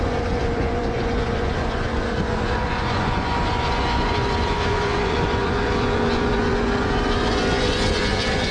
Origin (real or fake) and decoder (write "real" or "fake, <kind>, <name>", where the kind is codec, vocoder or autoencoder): fake, vocoder, Vocos